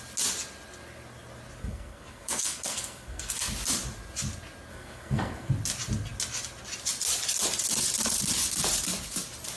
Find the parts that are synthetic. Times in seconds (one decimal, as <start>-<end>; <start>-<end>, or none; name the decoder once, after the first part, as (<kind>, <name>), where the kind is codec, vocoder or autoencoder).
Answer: 1.6-3.5 (codec, SNAC); 4.7-5.5